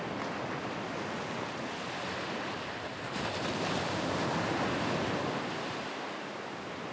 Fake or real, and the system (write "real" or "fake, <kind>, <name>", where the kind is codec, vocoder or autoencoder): real